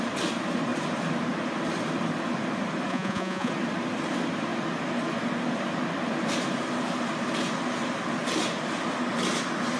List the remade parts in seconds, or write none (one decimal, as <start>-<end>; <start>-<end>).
2.9-3.5